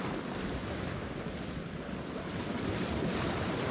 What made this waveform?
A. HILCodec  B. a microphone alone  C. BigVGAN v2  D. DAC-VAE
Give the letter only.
B